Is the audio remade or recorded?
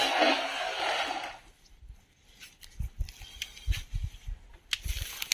recorded